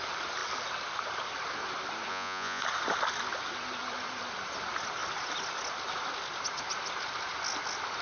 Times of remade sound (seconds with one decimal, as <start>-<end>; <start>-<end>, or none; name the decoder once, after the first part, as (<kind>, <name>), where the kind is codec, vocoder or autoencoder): 2.1-2.6 (vocoder, Vocos)